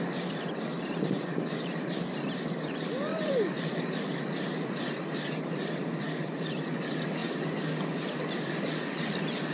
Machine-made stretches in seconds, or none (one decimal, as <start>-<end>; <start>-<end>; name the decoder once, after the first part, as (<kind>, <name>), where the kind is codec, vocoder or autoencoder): 0.7-2.0 (vocoder, BigVGAN v2); 3.1-6.3